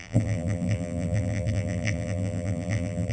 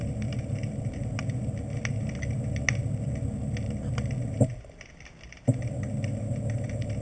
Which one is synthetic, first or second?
first